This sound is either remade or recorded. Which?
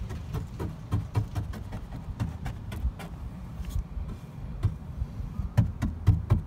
recorded